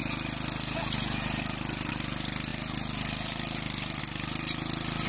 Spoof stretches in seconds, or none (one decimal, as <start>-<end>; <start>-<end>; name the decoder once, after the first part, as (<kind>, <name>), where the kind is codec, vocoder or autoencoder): none